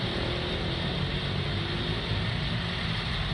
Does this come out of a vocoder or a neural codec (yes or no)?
no